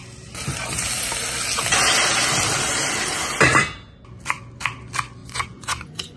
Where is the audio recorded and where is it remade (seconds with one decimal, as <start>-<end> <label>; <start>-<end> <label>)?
0.0-5.2 recorded; 5.2-6.2 remade